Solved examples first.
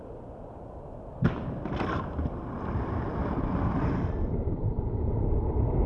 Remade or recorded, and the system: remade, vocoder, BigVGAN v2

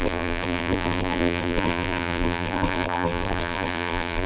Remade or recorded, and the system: remade, vocoder, BigVGAN v2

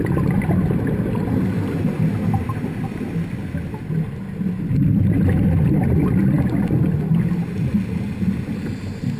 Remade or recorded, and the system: recorded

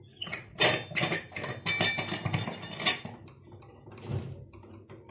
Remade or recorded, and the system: recorded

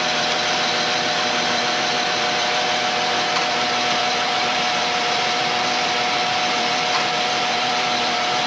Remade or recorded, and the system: remade, vocoder, BigVGAN v2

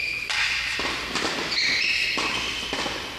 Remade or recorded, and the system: recorded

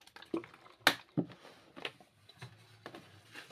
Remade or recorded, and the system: recorded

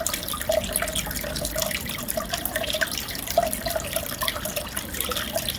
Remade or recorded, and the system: remade, vocoder, BigVGAN v2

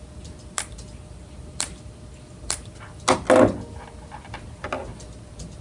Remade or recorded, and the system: recorded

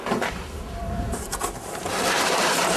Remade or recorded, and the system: remade, vocoder, BigVGAN v2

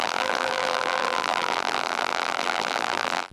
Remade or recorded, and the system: remade, vocoder, BigVGAN v2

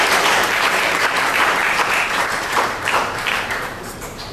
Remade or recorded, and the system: remade, vocoder, BigVGAN v2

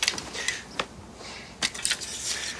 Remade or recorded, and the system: recorded